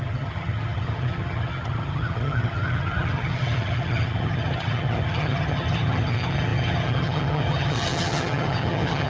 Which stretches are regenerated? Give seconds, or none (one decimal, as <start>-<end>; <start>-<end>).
0.0-9.1